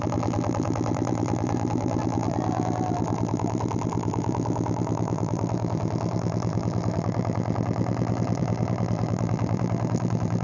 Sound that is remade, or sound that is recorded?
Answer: remade